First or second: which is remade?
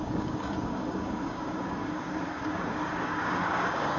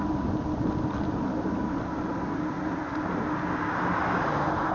first